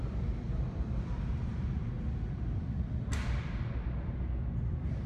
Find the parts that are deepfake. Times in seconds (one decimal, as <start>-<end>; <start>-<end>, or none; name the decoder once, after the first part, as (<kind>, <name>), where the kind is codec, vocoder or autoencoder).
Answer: none